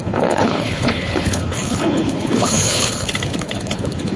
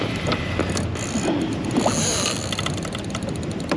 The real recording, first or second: second